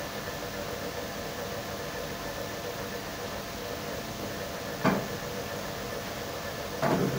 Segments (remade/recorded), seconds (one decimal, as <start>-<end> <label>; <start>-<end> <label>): 0.0-7.2 recorded